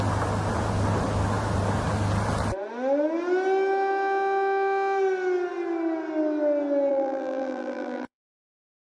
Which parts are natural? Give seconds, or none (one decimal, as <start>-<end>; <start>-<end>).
0.0-6.9; 8.4-8.9

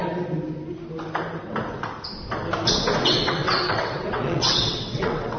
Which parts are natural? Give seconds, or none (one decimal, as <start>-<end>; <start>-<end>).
0.0-3.0